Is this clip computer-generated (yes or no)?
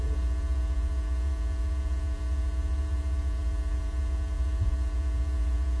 yes